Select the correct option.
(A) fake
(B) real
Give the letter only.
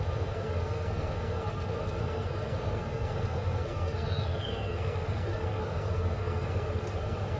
A